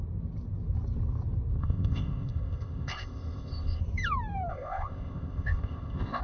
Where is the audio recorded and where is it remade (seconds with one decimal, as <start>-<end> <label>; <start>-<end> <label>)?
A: 0.0-1.6 recorded; 1.6-3.8 remade; 3.8-4.5 recorded; 4.5-6.2 remade